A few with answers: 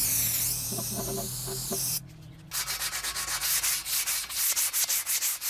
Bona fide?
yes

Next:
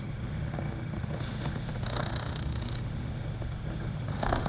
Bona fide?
no